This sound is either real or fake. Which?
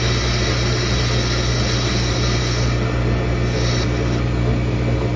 real